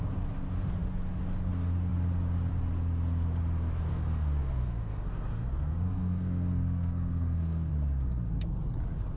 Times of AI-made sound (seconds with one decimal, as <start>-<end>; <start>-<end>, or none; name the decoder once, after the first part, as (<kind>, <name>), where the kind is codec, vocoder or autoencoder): 3.9-7.7 (codec, SNAC)